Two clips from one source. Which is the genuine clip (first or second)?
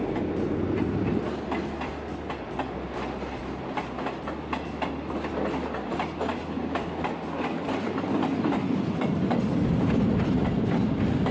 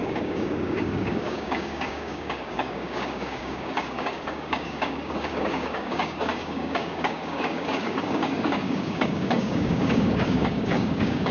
first